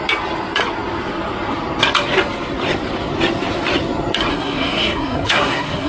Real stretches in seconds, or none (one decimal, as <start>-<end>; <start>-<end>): 0.0-4.3